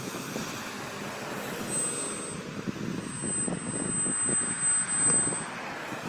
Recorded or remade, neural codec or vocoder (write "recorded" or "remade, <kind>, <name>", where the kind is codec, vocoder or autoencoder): recorded